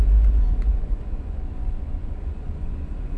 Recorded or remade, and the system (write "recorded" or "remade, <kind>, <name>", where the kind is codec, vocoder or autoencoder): remade, vocoder, Vocos